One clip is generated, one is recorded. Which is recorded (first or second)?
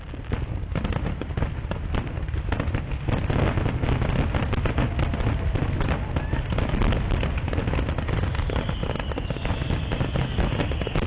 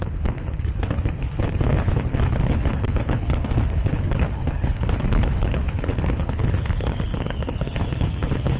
first